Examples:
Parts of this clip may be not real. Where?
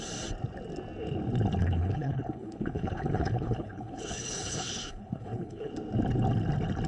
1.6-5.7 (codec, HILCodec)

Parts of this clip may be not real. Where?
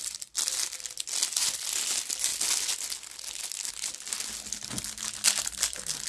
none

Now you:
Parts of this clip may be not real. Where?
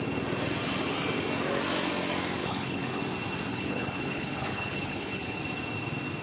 2.4-3.0 (codec, HILCodec); 3.5-5.4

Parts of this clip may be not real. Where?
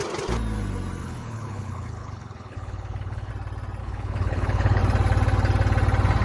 1.0-3.3 (codec, HILCodec); 3.8-4.8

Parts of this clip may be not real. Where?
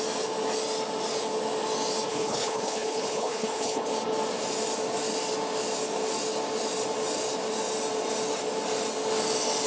2.1-3.9 (codec, HILCodec)